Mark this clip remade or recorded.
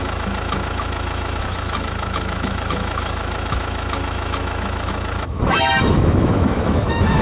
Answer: remade